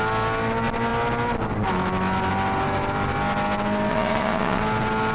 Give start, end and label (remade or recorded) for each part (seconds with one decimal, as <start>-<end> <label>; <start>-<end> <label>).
0.0-3.9 recorded; 3.9-4.6 remade; 4.6-5.1 recorded